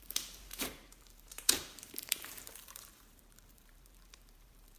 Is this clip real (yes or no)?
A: no